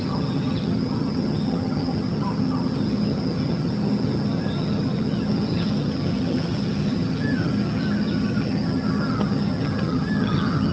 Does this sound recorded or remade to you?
remade